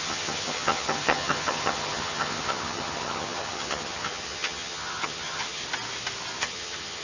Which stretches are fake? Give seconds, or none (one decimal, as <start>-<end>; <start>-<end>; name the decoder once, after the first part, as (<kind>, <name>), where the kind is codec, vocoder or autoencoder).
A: 0.0-5.6 (vocoder, HiFi-GAN); 6.4-7.0